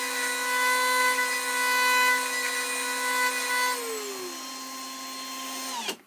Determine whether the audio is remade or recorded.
recorded